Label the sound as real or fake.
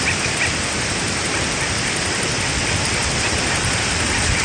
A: real